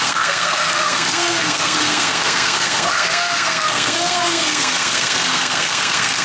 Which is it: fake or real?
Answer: fake